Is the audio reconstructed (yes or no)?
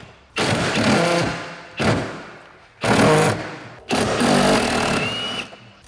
no